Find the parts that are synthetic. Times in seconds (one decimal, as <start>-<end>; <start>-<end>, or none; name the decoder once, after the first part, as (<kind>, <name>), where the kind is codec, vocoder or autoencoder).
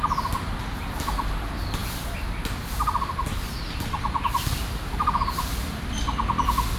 none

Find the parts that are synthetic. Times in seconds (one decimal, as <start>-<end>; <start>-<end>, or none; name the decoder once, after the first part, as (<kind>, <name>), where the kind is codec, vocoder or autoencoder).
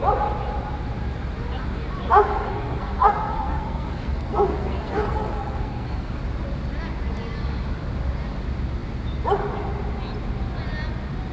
2.0-6.2 (codec, SNAC)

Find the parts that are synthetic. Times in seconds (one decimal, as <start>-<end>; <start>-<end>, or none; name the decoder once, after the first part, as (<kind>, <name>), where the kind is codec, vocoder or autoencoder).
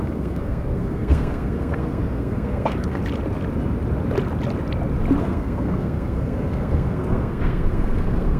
0.0-3.0 (codec, SNAC); 5.2-8.4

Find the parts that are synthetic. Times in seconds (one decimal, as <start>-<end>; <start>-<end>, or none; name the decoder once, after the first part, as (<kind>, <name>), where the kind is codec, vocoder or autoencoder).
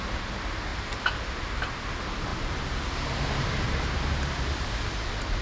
none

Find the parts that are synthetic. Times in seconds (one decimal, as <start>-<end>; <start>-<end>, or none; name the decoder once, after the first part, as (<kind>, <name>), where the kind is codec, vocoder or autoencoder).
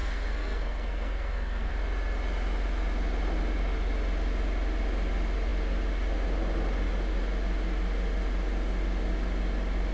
0.0-1.7 (codec, SNAC)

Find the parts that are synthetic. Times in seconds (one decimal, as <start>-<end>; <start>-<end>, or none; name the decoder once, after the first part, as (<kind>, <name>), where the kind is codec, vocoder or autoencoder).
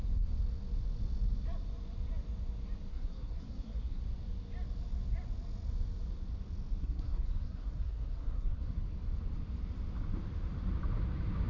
2.9-4.0 (codec, SNAC); 6.8-8.8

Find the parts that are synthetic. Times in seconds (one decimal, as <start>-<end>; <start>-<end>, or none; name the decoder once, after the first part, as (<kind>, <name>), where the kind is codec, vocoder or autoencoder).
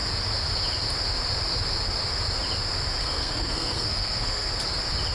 3.0-4.5 (codec, SNAC)